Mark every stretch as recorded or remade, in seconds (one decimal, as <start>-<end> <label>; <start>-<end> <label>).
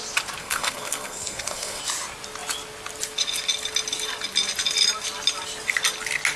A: 0.0-0.4 recorded; 0.4-1.8 remade; 1.8-6.4 recorded